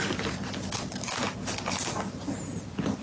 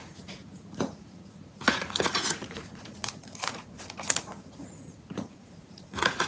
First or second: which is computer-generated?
second